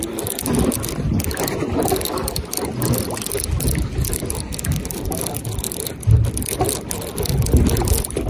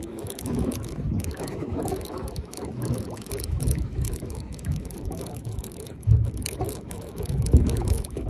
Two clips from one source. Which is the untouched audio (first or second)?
first